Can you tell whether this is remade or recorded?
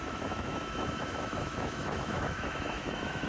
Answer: remade